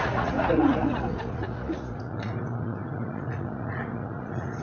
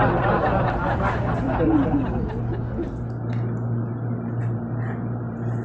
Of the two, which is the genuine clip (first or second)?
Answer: second